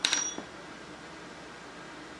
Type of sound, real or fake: real